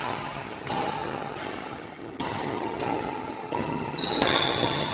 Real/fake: fake